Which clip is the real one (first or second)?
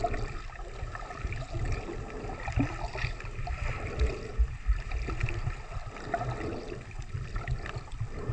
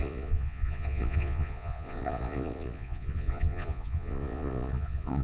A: first